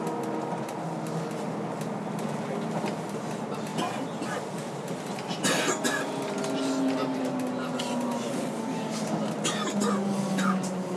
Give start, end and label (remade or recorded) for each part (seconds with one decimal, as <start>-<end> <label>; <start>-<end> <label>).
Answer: 0.0-11.0 recorded